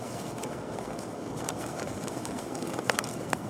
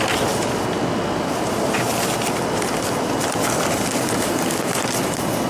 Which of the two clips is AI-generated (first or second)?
first